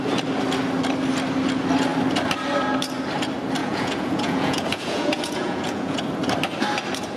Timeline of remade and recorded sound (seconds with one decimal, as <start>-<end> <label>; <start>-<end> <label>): 0.0-3.6 recorded; 3.6-6.0 remade; 6.0-7.2 recorded